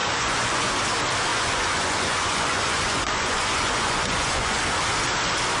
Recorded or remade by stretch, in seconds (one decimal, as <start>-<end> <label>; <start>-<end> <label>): 0.0-0.7 remade; 0.7-1.3 recorded; 1.3-4.6 remade; 4.6-5.6 recorded